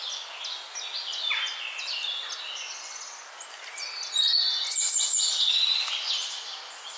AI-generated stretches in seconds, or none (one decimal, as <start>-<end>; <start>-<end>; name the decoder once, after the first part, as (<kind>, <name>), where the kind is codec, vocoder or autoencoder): none